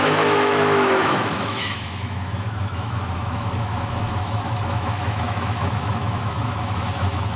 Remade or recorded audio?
remade